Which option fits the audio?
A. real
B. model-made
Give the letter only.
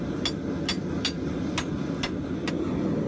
A